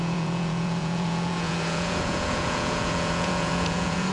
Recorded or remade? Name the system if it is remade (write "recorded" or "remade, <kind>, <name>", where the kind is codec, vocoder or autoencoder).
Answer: remade, vocoder, Vocos